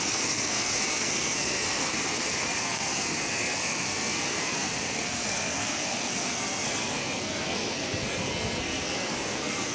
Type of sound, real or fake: fake